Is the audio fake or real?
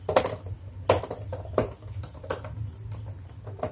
real